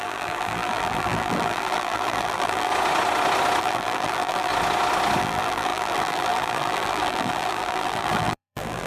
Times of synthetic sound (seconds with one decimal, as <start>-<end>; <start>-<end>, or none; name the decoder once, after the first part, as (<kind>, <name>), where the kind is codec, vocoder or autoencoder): 0.0-2.7 (vocoder, BigVGAN v2); 3.6-4.5; 5.2-8.9